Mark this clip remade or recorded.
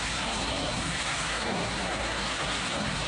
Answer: remade